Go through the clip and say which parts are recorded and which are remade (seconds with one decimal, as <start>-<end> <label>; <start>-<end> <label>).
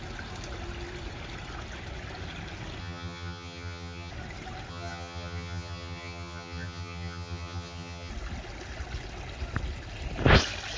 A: 0.0-2.8 recorded; 2.8-4.1 remade; 4.1-4.7 recorded; 4.7-8.1 remade; 8.1-10.8 recorded